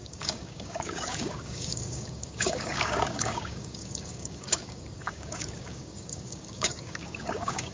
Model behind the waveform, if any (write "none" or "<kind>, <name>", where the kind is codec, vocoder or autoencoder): codec, DAC